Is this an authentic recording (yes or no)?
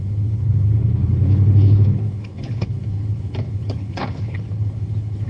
no